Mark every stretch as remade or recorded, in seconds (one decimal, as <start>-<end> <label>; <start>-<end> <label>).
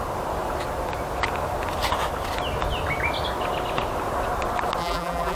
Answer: 0.0-4.8 recorded; 4.8-5.4 remade